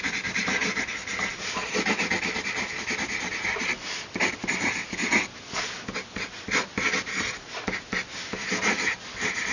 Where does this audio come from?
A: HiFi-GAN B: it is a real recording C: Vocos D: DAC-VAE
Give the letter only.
B